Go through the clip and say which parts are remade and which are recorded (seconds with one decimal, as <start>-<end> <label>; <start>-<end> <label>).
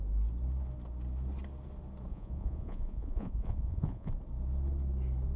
0.0-2.1 recorded; 2.1-4.1 remade; 4.1-5.4 recorded